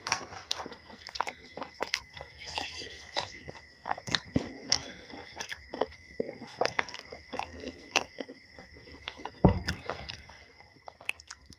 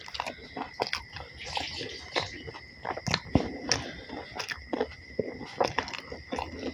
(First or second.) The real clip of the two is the second